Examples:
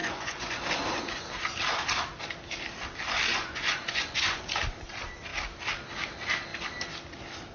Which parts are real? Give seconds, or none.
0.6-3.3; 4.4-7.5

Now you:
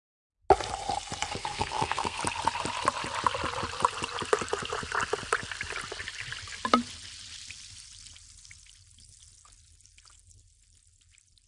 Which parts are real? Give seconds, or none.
0.0-1.4; 2.2-11.5

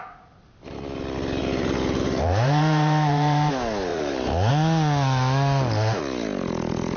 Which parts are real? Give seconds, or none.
0.0-1.4; 3.5-3.9; 4.5-7.0

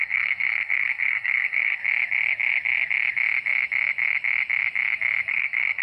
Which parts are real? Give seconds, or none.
1.8-5.3